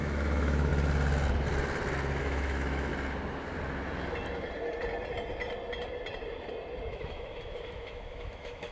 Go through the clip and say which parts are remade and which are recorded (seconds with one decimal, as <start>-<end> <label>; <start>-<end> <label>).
0.0-0.7 remade; 0.7-2.2 recorded; 2.2-2.9 remade; 2.9-6.9 recorded; 6.9-8.7 remade